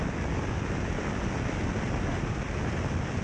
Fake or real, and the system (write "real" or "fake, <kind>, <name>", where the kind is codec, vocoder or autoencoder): real